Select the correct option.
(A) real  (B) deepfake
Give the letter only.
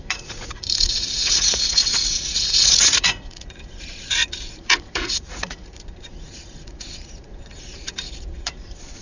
B